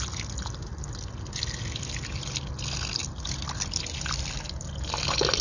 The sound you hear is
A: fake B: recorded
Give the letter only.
B